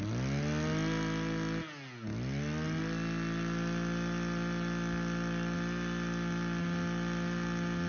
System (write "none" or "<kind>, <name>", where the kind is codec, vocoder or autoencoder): none